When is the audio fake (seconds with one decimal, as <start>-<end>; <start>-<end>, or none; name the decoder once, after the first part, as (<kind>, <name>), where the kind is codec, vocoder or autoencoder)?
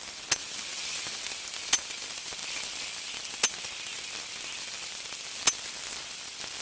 none